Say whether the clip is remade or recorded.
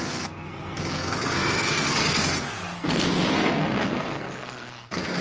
remade